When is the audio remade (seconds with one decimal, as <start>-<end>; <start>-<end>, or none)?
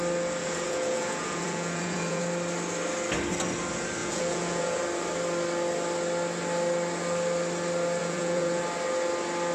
0.4-2.2; 4.0-4.8; 8.0-8.6